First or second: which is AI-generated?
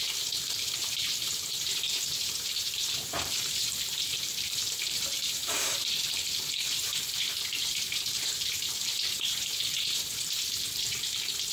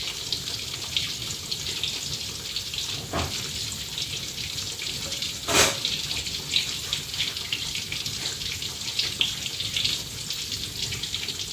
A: first